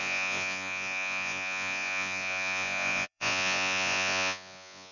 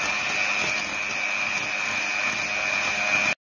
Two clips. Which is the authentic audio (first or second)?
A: second